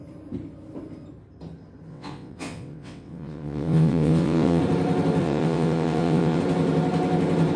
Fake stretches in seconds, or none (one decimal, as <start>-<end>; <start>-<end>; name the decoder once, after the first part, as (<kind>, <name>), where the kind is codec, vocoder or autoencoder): 1.9-4.6 (vocoder, WaveNeXt); 5.2-6.4